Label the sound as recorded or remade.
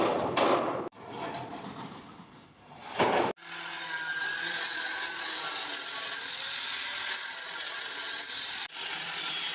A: recorded